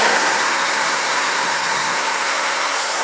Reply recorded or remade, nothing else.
remade